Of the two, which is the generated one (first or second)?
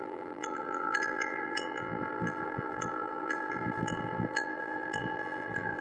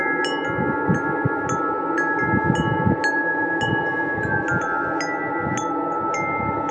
first